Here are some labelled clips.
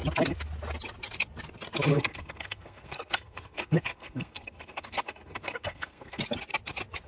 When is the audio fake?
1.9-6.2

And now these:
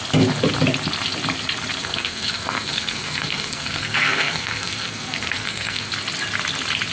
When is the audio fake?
1.8-5.9

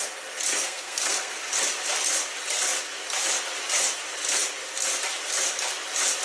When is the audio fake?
0.5-1.4

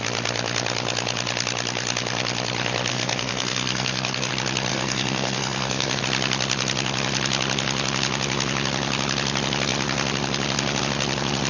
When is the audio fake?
2.9-4.3; 4.7-6.0

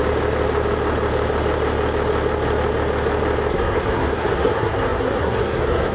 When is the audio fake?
3.5-5.9

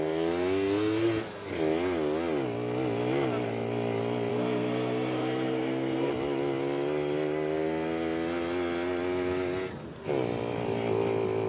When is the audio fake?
4.3-6.1

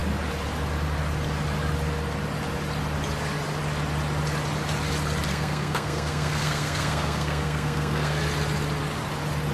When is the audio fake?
5.3-8.2